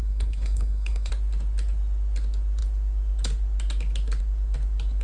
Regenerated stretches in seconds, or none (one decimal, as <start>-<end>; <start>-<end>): 0.0-1.1